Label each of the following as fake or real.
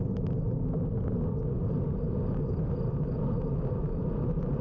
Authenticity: real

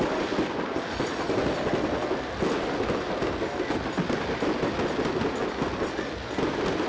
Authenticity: real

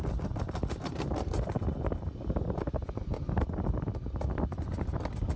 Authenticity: real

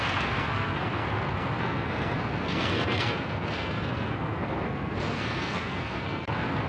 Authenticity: fake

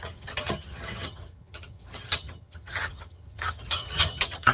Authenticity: fake